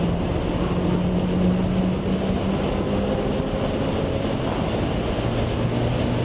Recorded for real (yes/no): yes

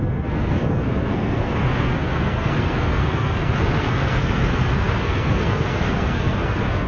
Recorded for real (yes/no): no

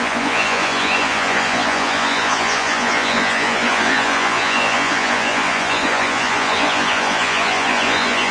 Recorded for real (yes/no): no